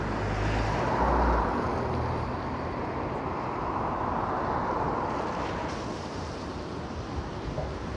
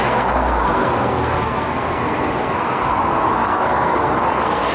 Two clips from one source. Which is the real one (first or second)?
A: first